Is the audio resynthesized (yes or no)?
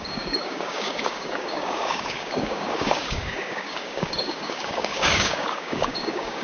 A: yes